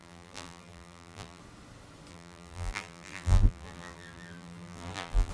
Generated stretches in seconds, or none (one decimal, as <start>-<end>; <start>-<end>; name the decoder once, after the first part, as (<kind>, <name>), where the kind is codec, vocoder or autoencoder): 0.0-1.4 (vocoder, BigVGAN v2); 2.1-5.3

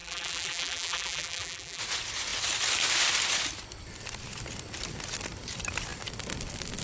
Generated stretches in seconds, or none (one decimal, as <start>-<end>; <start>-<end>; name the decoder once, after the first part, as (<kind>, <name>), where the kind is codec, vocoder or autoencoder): 0.0-1.8 (vocoder, BigVGAN v2)